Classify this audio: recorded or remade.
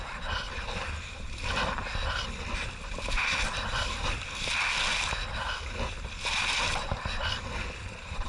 recorded